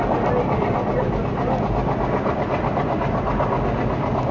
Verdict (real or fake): real